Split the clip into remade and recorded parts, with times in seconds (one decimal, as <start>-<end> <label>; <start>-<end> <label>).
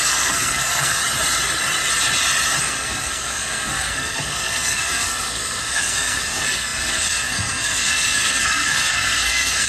0.0-1.0 remade; 1.0-2.6 recorded; 2.6-9.7 remade